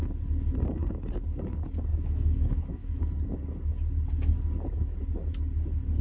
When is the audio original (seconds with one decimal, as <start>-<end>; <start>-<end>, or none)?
0.0-1.9; 3.0-6.0